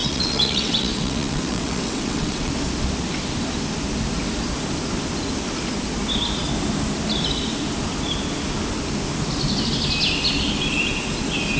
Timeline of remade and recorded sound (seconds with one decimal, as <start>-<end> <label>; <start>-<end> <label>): 0.0-2.5 remade; 2.5-11.6 recorded